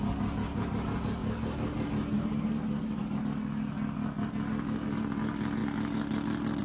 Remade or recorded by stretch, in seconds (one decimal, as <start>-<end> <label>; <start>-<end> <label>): 0.0-1.2 recorded; 1.2-3.2 remade; 3.2-6.6 recorded